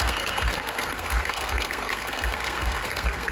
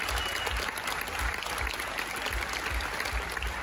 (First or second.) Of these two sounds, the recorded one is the second